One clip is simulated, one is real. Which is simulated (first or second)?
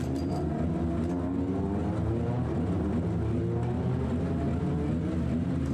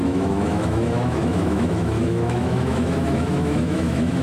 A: second